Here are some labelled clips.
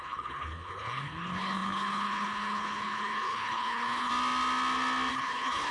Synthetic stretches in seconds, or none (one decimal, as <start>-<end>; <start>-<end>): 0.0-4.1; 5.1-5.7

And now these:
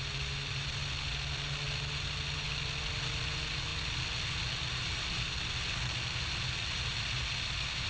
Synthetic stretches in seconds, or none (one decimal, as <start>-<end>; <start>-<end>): none

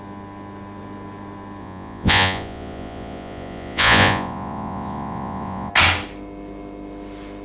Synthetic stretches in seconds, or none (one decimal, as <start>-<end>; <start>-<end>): 1.6-5.7

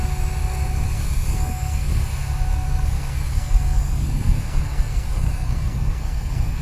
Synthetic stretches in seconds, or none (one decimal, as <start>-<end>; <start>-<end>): 0.4-1.9; 2.5-6.6

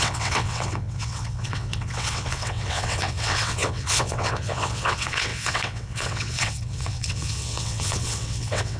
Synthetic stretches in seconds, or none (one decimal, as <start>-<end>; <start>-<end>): 0.0-8.8

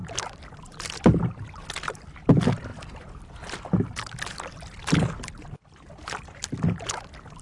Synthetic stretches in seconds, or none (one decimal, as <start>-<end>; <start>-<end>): none

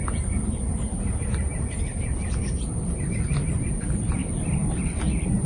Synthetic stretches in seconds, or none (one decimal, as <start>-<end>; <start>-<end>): none

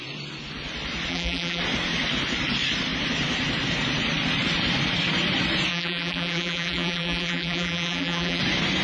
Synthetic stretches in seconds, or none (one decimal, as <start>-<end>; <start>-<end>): 1.1-1.6; 5.7-8.4